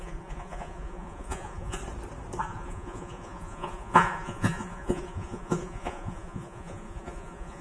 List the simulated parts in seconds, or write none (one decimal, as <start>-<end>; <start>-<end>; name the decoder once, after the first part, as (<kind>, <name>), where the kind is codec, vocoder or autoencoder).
0.0-1.8 (vocoder, Vocos); 2.4-7.6